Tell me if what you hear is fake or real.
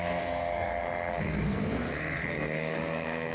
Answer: fake